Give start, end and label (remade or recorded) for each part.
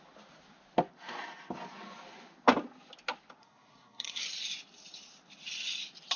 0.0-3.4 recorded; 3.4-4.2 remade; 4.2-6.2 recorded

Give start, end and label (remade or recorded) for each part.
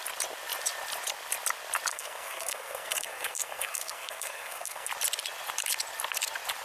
0.0-1.9 recorded; 1.9-4.9 remade; 4.9-6.6 recorded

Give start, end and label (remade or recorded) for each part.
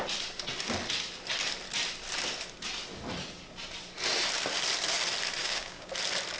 0.0-5.4 recorded; 5.4-5.9 remade; 5.9-6.4 recorded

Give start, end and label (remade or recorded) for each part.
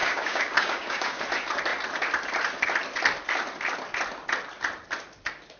0.0-1.2 remade; 1.2-5.6 recorded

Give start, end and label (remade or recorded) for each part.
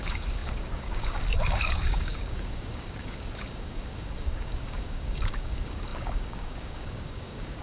0.0-7.6 remade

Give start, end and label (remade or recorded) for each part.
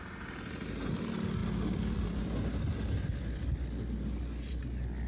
0.0-5.1 recorded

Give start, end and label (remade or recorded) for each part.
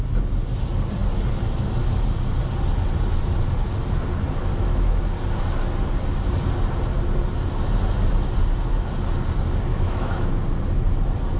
0.0-4.5 recorded; 4.5-5.0 remade; 5.0-9.7 recorded; 9.7-10.3 remade; 10.3-11.4 recorded